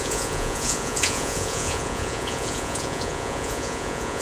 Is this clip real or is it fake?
fake